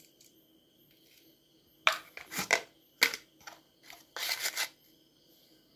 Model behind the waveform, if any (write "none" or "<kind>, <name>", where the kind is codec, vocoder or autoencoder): none